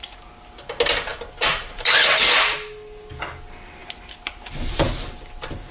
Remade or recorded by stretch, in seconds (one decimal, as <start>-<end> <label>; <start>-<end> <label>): 0.0-5.7 recorded